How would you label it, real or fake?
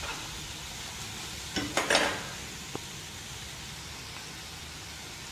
real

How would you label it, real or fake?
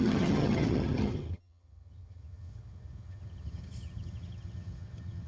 fake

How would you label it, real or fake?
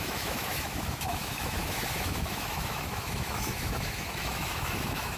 fake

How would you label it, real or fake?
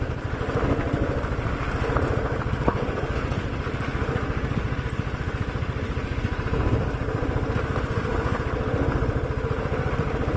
real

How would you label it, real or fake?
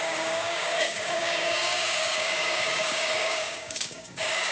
fake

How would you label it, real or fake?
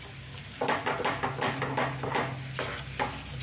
real